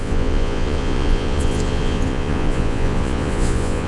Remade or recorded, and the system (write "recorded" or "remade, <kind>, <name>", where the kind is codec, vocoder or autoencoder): remade, vocoder, Vocos